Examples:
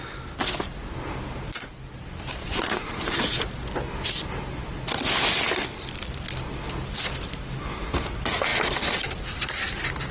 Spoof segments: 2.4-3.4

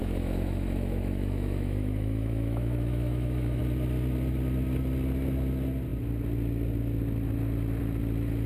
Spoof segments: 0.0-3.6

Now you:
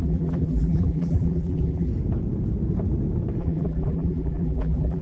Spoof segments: 0.0-1.9; 3.4-5.0